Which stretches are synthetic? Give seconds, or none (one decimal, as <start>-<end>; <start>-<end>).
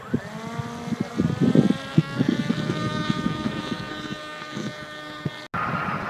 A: 1.9-5.3